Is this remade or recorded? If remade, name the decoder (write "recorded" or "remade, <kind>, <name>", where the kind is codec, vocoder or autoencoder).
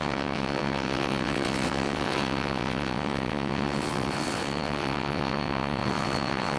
remade, vocoder, WaveNeXt